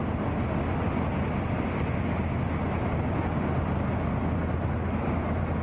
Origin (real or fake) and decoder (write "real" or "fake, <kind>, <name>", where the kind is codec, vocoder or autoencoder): real